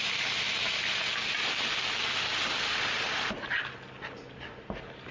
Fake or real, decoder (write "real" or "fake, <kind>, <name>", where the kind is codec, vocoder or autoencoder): real